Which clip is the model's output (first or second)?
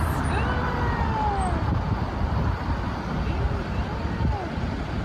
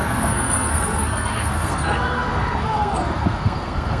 second